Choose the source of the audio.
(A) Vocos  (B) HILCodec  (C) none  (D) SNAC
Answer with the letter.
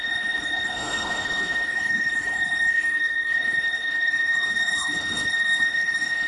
B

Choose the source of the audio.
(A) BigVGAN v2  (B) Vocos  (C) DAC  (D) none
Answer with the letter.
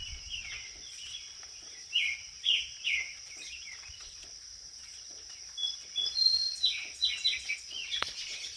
B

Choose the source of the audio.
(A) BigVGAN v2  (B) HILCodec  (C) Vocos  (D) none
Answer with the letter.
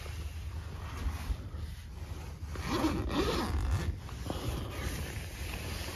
D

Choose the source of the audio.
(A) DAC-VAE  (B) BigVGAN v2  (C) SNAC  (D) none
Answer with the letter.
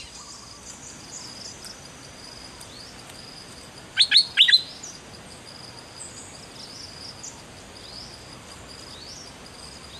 D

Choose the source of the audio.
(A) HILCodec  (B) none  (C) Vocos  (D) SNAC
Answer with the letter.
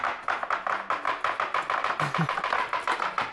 B